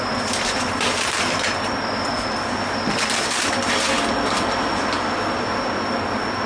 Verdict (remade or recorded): recorded